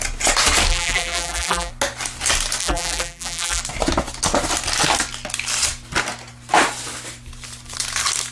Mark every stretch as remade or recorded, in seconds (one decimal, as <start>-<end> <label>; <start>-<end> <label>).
0.0-0.7 recorded; 0.7-1.7 remade; 1.7-2.6 recorded; 2.6-3.6 remade; 3.6-8.3 recorded